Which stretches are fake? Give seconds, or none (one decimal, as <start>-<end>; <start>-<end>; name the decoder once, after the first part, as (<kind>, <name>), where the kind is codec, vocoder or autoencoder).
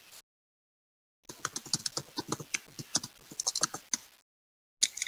none